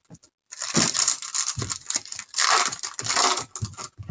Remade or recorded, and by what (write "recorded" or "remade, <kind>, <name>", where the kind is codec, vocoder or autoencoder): recorded